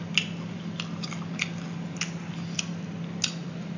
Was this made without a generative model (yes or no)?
yes